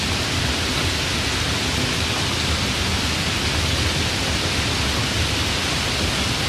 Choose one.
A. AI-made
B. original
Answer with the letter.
B